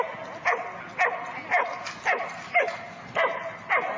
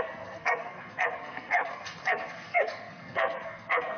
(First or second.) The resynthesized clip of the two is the second